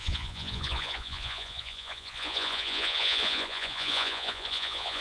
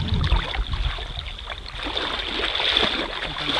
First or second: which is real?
second